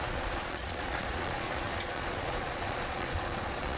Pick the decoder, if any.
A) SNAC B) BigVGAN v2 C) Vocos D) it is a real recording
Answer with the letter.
C